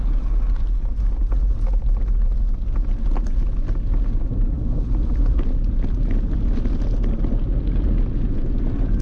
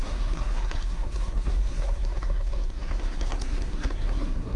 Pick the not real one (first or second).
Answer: second